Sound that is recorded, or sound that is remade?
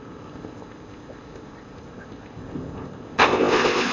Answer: remade